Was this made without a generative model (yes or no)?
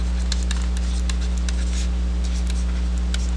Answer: yes